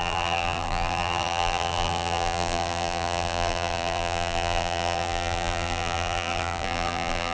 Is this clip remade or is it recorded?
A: remade